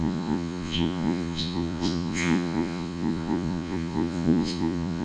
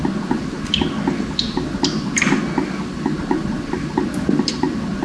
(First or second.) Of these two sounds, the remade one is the first